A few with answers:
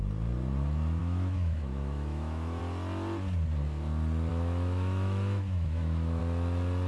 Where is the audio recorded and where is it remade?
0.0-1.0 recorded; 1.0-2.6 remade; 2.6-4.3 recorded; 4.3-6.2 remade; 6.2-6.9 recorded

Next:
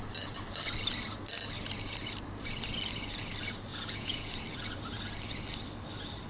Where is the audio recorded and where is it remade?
0.0-3.7 recorded; 3.7-4.3 remade; 4.3-6.3 recorded

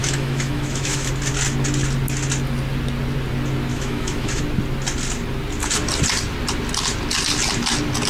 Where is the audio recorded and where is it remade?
0.0-1.1 remade; 1.1-3.7 recorded; 3.7-4.4 remade; 4.4-8.1 recorded

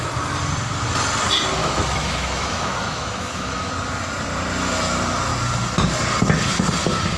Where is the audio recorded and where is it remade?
0.0-1.6 recorded; 1.6-3.7 remade; 3.7-7.2 recorded

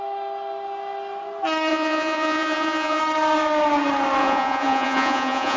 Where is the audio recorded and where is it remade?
0.0-1.7 recorded; 1.7-3.0 remade; 3.0-4.2 recorded; 4.2-5.6 remade

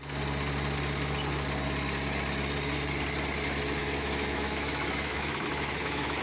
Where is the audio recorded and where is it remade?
0.0-3.8 recorded; 3.8-6.2 remade